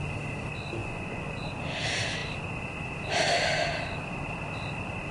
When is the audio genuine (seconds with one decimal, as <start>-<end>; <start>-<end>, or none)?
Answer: 0.0-0.8; 1.5-5.1